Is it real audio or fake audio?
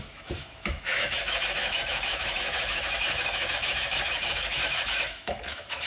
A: fake